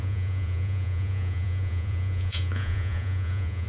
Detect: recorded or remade remade